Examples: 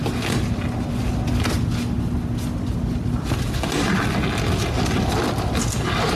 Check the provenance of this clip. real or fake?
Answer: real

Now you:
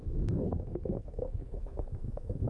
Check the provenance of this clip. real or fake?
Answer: fake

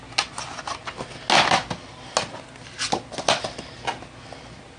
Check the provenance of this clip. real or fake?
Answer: real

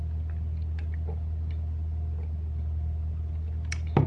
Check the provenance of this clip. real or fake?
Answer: real